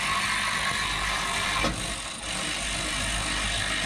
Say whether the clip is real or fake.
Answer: real